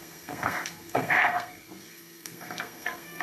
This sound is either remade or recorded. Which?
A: remade